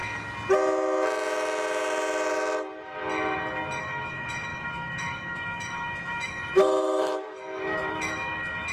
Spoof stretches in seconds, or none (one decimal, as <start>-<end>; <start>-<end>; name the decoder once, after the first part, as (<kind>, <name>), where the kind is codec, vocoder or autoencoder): 3.8-8.7 (autoencoder, DAC-VAE)